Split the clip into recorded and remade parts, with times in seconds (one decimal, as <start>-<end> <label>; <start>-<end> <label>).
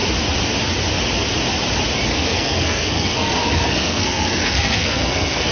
0.0-2.1 recorded; 2.1-5.5 remade